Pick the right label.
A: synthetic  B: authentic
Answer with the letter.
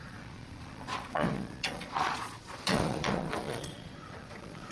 A